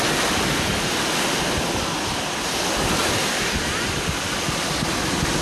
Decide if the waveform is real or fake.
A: real